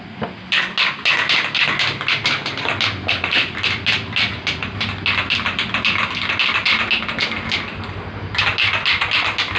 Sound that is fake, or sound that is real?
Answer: real